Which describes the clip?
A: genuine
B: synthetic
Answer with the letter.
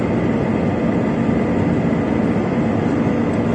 A